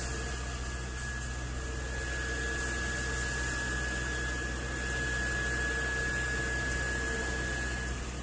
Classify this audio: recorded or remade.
recorded